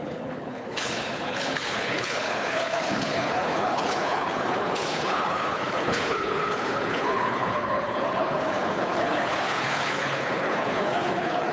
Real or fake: fake